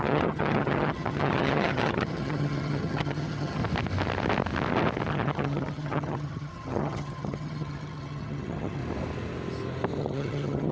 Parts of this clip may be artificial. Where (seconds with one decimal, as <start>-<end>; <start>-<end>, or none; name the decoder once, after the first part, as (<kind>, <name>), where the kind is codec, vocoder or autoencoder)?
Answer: 0.0-3.6 (vocoder, HiFi-GAN); 5.1-8.8; 10.0-10.7